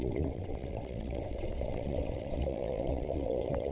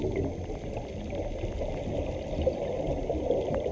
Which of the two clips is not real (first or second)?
first